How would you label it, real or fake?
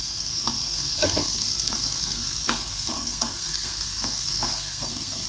fake